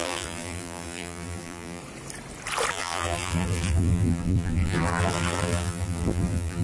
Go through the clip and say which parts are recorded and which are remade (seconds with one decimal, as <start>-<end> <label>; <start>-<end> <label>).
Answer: 0.0-1.8 remade; 1.8-2.7 recorded; 2.7-6.6 remade